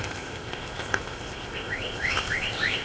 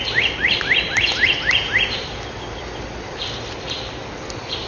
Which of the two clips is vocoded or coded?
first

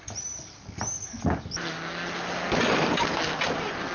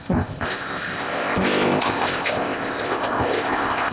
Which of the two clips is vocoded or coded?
second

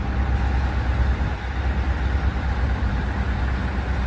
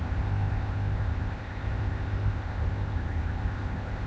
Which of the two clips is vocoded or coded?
second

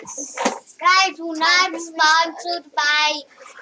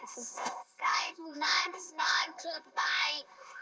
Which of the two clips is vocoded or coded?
second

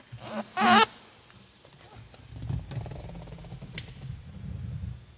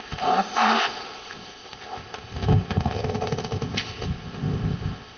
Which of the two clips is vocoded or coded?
second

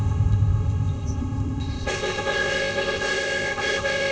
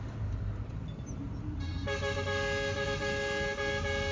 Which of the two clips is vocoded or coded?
first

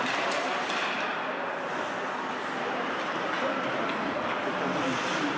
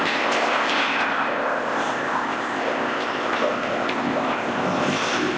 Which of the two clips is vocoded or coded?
second